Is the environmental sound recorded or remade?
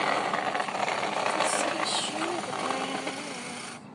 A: recorded